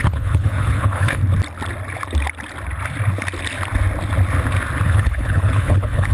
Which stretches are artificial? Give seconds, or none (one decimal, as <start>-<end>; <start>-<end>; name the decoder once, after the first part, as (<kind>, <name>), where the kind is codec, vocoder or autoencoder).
0.0-1.2 (codec, HILCodec); 4.9-6.1